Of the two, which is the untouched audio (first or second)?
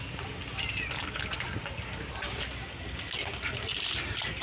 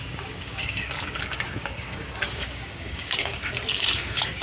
first